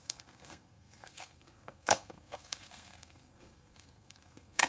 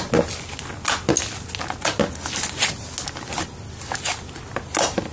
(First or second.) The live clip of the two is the second